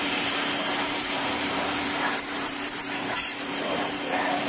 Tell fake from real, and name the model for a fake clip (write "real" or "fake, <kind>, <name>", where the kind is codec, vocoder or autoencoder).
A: fake, vocoder, BigVGAN v2